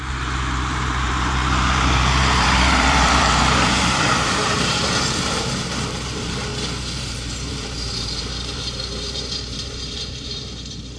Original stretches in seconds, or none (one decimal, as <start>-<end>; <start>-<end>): 6.5-7.0